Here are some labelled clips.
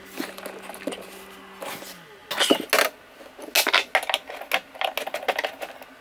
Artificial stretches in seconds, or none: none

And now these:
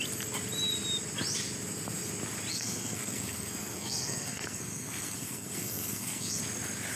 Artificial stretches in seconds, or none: 2.5-6.4 (codec, SNAC)

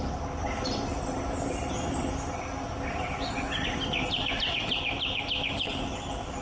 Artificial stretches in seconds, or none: 4.0-5.2 (vocoder, BigVGAN v2)

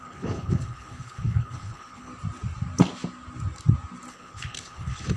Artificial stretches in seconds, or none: 0.0-2.1 (codec, HILCodec); 4.1-5.2

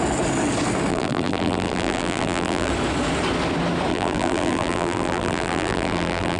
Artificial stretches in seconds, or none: 0.9-2.7 (vocoder, BigVGAN v2); 3.9-6.4